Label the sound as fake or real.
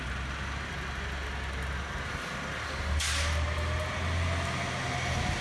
real